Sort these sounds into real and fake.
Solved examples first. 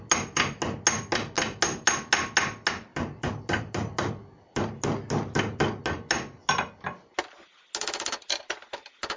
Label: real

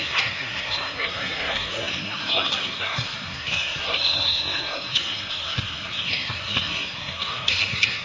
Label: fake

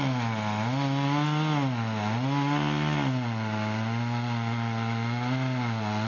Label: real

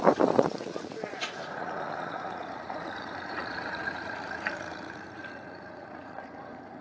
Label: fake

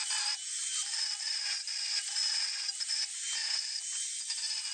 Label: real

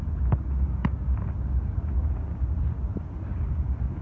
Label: real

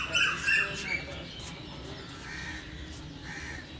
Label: real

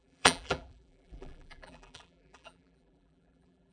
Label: fake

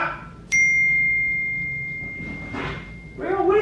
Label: real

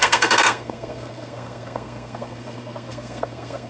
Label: fake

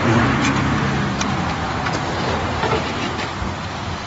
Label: fake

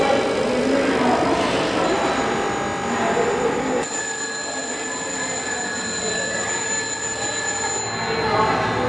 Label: real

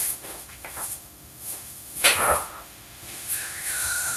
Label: fake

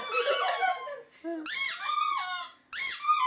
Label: real